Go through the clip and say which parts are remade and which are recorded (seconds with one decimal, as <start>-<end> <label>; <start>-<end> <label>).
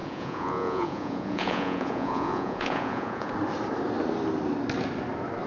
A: 0.0-3.3 remade; 3.3-5.5 recorded